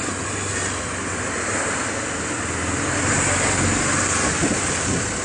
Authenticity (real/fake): real